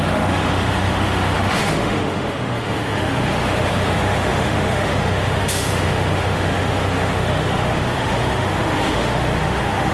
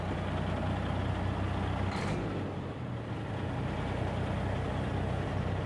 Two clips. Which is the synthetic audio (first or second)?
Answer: first